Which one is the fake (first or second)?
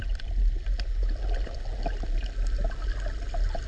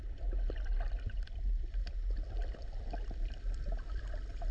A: second